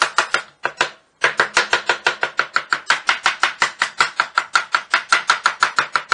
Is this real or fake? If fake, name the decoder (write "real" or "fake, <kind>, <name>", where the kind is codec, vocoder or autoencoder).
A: real